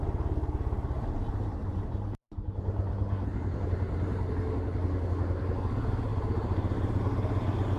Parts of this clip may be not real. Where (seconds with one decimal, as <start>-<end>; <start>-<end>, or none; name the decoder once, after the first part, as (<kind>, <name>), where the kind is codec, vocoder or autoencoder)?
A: 1.6-4.4 (vocoder, BigVGAN v2); 6.1-7.0